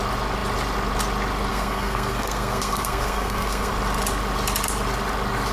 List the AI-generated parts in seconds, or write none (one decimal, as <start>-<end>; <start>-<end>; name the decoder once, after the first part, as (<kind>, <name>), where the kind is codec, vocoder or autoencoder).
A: 1.5-3.7 (codec, SNAC)